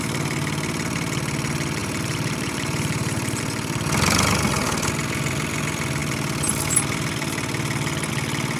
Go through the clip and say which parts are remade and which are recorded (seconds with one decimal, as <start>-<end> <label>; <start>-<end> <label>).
0.0-1.8 recorded; 1.8-3.4 remade; 3.4-8.6 recorded